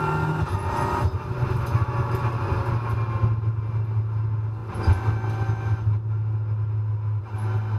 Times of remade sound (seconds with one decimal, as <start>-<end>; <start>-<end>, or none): none